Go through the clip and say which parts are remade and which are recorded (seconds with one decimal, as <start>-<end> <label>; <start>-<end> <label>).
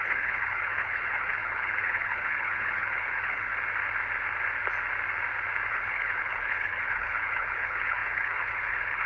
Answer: 0.0-3.5 remade; 3.5-5.7 recorded; 5.7-9.1 remade